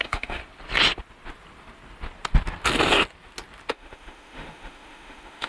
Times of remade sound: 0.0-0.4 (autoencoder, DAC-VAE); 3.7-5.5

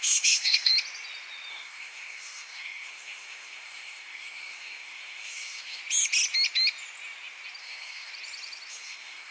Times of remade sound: 0.0-0.7 (codec, SNAC); 1.5-5.8; 7.6-8.1; 8.7-9.3